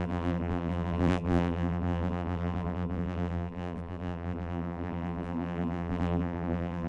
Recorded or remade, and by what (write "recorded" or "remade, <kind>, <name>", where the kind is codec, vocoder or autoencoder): remade, vocoder, BigVGAN v2